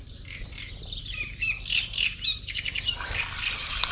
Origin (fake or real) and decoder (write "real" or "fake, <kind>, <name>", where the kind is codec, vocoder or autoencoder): fake, vocoder, BigVGAN v2